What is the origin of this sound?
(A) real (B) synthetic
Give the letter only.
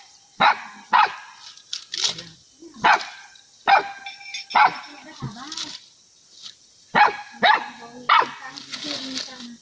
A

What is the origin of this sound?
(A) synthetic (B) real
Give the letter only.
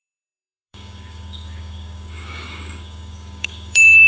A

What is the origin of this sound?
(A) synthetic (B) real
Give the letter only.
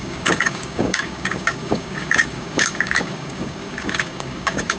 A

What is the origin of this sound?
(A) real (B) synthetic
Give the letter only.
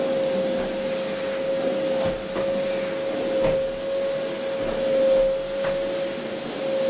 A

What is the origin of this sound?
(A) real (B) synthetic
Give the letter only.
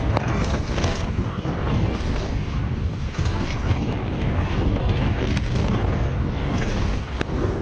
B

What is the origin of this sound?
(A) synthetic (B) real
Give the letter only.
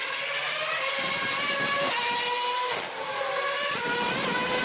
B